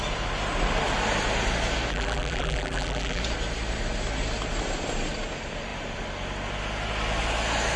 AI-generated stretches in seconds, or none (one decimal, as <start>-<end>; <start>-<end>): 1.9-3.2